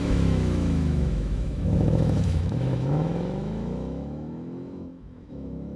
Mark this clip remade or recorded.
remade